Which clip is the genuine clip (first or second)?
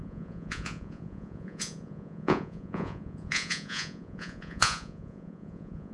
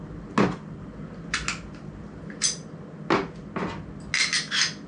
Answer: second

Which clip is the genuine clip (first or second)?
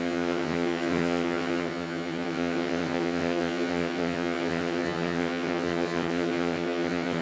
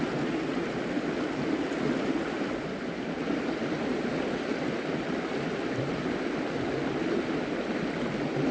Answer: second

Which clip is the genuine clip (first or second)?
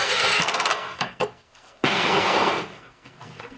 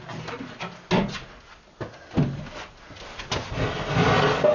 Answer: second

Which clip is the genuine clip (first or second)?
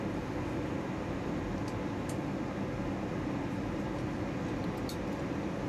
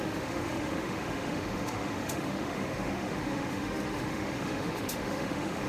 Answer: first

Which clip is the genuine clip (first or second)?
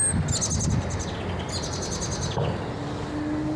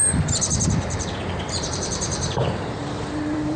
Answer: first